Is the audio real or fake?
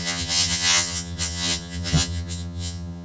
fake